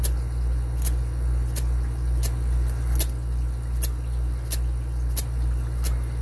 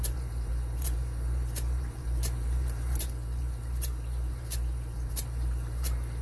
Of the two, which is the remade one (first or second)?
second